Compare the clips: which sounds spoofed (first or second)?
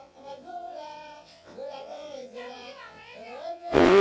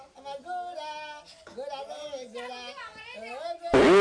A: first